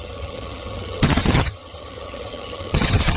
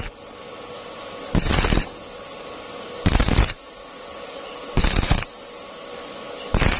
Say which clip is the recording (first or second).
second